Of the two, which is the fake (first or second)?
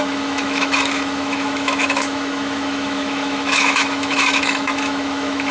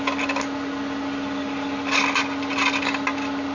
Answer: first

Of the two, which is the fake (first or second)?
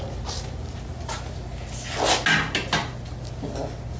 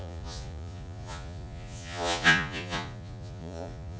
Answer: second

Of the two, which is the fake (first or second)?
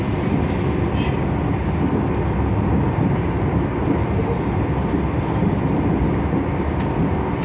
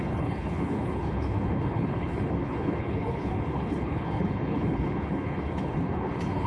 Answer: second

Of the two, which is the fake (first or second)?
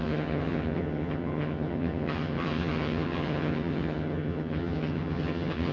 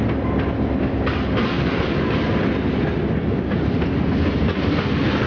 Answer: first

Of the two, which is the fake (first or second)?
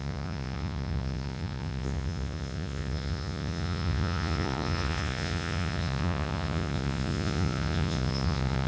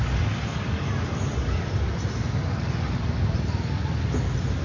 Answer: first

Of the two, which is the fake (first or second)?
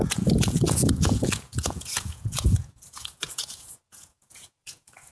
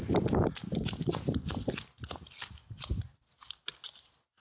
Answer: first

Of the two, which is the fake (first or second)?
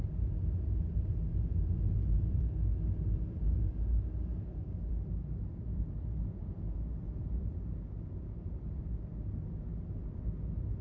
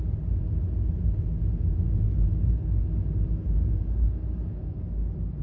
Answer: first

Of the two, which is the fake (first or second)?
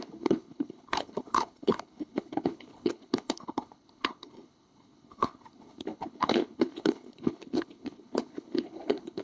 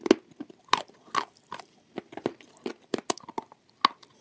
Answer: first